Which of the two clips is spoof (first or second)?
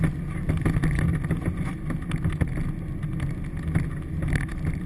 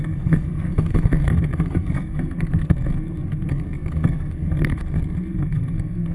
second